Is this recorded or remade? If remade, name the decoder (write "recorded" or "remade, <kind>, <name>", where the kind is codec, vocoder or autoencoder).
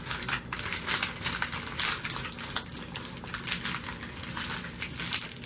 recorded